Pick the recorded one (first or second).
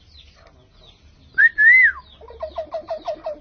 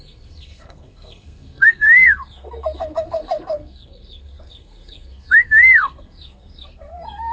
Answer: first